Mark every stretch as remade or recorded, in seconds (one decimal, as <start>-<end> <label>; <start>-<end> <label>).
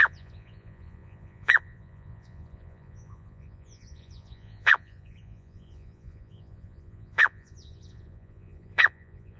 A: 0.0-9.4 remade